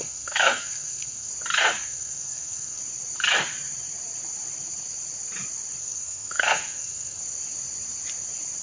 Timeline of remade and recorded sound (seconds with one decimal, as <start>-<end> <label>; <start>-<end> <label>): 0.0-1.3 remade; 1.3-1.8 recorded; 1.8-2.8 remade; 2.8-5.8 recorded; 5.8-7.2 remade; 7.2-8.6 recorded